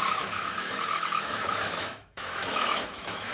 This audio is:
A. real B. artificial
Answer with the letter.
B